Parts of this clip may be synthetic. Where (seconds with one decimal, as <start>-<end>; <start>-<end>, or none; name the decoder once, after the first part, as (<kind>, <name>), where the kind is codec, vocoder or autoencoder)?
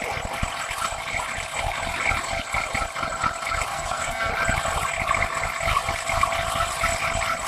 3.7-4.3 (codec, SNAC)